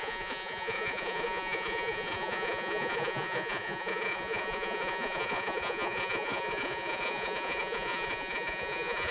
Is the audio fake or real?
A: fake